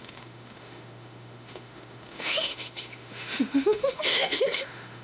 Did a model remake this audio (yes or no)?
yes